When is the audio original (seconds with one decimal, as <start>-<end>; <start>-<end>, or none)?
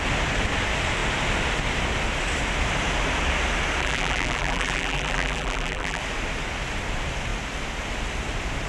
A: 0.0-3.8; 6.0-8.7